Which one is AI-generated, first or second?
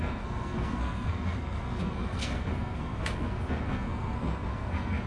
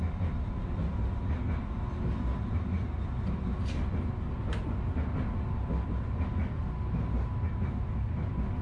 first